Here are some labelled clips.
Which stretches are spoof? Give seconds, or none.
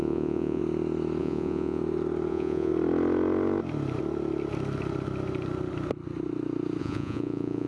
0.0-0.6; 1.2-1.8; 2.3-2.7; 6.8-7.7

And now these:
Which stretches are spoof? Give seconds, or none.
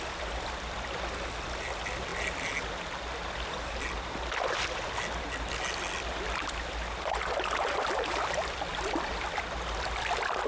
none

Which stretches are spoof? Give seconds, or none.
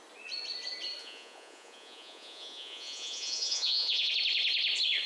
1.0-4.1